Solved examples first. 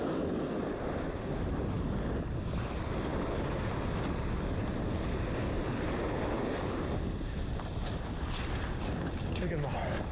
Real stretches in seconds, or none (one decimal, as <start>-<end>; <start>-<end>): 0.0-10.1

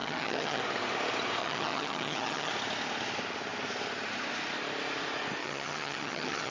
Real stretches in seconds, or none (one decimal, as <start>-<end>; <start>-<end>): 0.6-1.4; 2.5-5.4

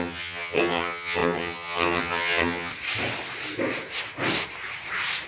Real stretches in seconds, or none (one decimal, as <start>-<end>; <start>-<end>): 2.7-5.3

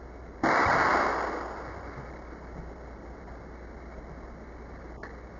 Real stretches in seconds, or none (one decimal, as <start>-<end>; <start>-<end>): 0.0-5.4

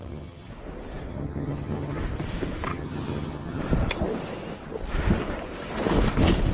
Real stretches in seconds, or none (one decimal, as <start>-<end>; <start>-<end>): 0.5-1.1; 2.0-2.7; 3.6-6.5

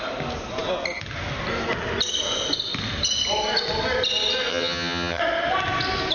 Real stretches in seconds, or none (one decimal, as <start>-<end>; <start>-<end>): 0.0-4.5; 5.2-6.1